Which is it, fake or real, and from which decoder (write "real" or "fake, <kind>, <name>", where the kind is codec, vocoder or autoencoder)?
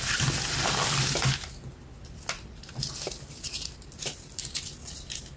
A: real